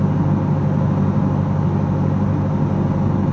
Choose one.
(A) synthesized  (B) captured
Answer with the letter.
B